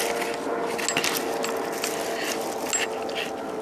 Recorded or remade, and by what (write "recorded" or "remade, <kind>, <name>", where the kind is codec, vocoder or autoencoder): recorded